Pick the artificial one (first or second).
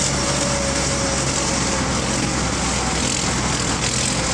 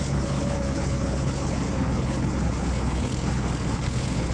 second